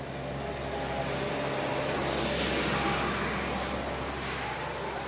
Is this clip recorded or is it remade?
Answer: recorded